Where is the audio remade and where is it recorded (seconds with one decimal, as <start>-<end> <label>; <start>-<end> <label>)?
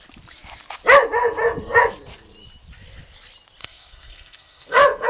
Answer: 0.0-3.6 recorded; 3.6-5.1 remade